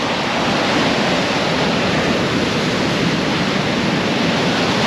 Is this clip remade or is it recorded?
recorded